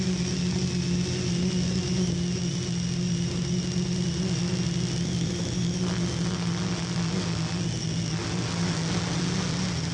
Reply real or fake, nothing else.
real